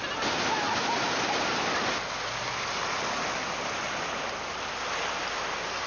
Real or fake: real